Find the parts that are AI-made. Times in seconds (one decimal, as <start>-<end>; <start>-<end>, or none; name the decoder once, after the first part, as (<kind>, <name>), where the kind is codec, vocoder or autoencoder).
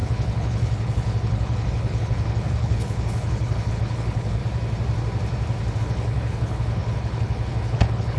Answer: 0.0-4.4 (codec, HILCodec); 5.8-8.2